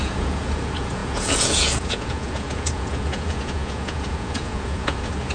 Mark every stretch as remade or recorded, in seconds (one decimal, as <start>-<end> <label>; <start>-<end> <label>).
0.0-5.3 remade